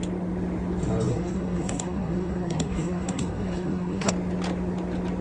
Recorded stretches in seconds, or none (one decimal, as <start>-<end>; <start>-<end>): 0.0-1.1; 4.1-5.2